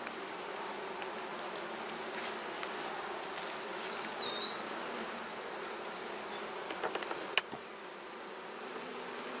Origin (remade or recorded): recorded